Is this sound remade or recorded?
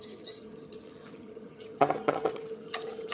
remade